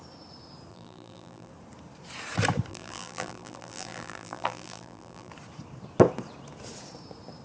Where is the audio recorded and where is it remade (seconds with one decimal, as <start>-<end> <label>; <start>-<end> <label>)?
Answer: 0.0-0.7 recorded; 0.7-1.5 remade; 1.5-2.7 recorded; 2.7-5.3 remade; 5.3-7.4 recorded